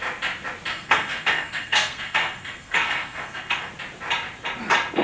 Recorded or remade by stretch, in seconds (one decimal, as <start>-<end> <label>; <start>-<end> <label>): 0.0-0.7 recorded; 0.7-3.7 remade; 3.7-5.0 recorded